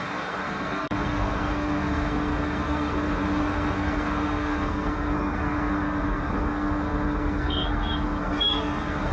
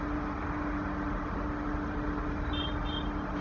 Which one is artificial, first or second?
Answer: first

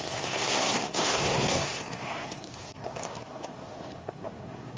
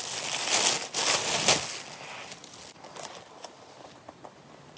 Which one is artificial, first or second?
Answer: first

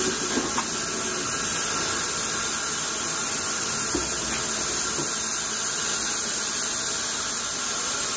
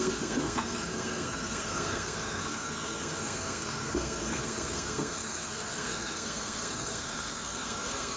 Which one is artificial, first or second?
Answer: second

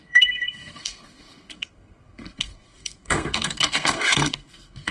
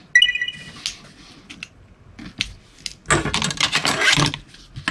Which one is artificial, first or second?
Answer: first